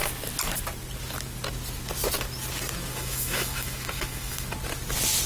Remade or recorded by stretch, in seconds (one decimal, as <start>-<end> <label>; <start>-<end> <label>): 0.0-2.9 recorded; 2.9-4.5 remade; 4.5-5.3 recorded